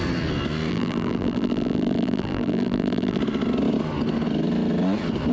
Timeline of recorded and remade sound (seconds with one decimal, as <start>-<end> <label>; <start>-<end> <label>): 0.0-0.7 recorded; 0.7-3.2 remade; 3.2-5.3 recorded